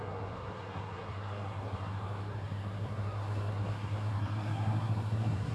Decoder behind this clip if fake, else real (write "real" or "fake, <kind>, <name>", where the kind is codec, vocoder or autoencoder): fake, codec, SNAC